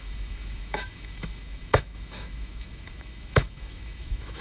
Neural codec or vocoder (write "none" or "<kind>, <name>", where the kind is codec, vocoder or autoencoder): autoencoder, DAC-VAE